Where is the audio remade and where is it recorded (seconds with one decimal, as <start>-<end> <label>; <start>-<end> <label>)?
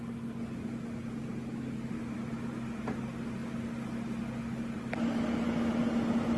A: 0.0-6.4 recorded